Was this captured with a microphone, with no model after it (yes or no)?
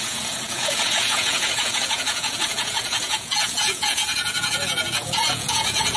no